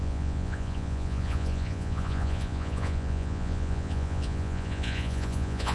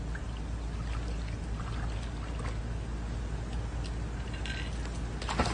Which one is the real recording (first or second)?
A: second